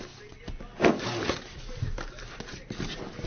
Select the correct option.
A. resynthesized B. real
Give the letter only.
B